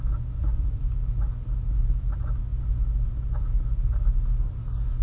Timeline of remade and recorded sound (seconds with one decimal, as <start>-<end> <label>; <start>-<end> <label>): 0.0-0.4 recorded; 0.4-0.9 remade; 0.9-5.0 recorded